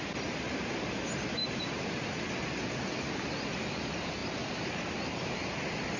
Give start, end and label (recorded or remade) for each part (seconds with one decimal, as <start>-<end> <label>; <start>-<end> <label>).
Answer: 0.0-1.4 recorded; 1.4-2.1 remade; 2.1-4.2 recorded; 4.2-5.3 remade; 5.3-6.0 recorded